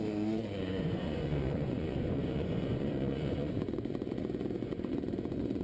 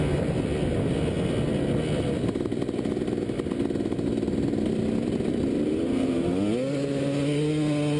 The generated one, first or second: first